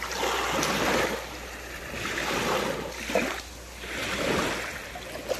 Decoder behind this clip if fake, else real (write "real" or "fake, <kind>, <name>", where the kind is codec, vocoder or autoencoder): real